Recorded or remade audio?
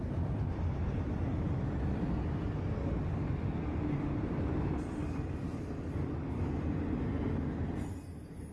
recorded